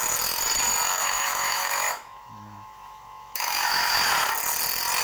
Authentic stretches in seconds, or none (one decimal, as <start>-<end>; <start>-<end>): 0.0-1.0; 4.0-5.0